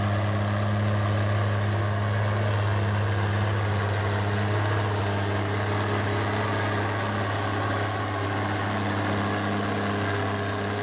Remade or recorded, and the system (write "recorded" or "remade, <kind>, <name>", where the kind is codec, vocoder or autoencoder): recorded